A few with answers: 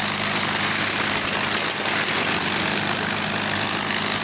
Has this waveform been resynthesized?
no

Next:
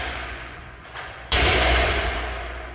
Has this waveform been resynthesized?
yes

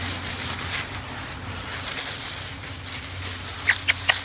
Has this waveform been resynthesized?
no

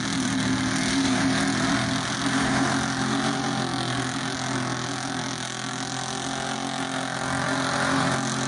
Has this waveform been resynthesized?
no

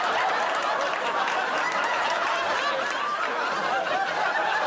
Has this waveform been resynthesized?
no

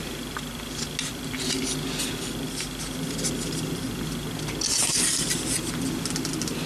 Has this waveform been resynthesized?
no